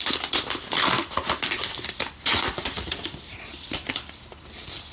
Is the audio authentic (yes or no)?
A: no